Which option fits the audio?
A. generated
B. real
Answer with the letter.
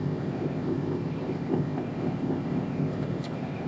A